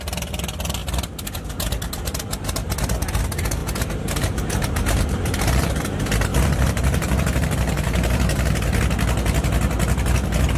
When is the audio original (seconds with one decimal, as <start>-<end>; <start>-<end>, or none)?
0.0-3.6; 5.7-6.3; 8.8-10.6